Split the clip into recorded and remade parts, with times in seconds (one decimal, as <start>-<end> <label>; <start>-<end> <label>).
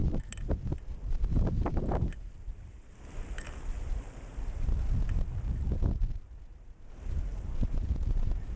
0.0-3.3 remade; 3.3-7.3 recorded; 7.3-8.6 remade